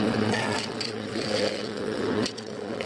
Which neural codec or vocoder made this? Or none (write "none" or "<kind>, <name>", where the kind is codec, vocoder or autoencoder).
vocoder, WaveNeXt